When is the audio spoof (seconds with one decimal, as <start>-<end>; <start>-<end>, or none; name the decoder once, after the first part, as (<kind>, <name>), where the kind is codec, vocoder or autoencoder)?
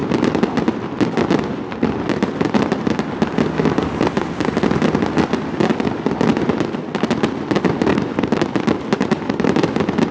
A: 7.9-9.7 (vocoder, BigVGAN v2)